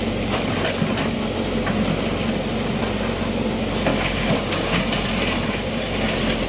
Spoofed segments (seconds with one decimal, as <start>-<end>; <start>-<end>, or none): 3.9-4.8